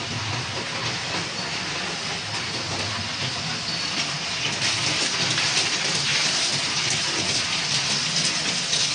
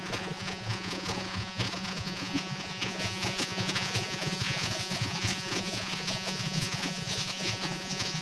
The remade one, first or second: second